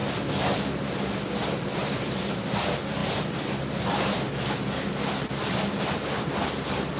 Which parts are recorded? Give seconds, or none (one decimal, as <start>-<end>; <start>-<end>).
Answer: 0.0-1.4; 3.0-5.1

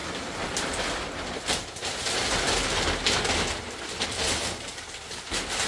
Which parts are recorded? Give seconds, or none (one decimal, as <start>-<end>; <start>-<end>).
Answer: 0.0-5.7

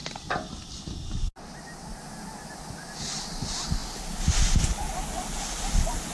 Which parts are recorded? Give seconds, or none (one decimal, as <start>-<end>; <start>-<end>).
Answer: 0.0-6.1

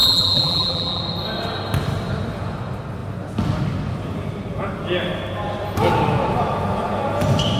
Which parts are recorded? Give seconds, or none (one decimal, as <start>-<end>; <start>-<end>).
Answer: 1.0-7.6